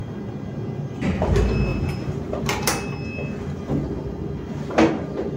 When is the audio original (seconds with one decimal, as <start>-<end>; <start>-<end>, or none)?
0.0-5.4